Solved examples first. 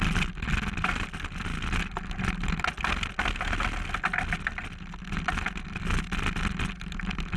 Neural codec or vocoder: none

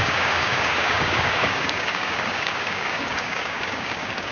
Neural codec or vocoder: codec, DAC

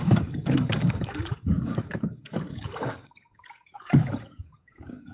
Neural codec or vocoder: codec, DAC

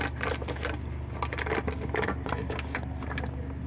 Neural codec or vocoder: none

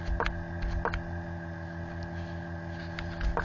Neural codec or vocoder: none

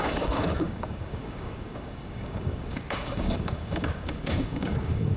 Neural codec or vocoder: codec, DAC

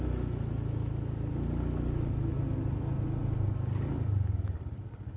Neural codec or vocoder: none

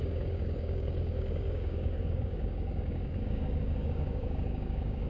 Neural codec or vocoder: codec, DAC